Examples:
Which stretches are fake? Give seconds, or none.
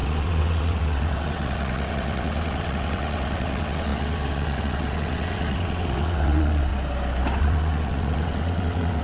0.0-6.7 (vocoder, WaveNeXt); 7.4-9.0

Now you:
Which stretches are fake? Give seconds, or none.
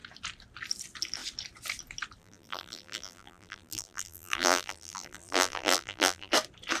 2.2-6.3 (vocoder, BigVGAN v2)